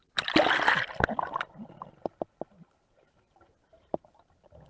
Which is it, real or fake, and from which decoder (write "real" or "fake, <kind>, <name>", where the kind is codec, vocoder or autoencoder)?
real